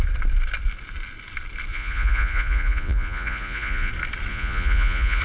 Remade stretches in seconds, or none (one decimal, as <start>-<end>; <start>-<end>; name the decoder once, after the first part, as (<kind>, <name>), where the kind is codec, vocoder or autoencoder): 1.7-3.9 (vocoder, Vocos); 4.3-5.2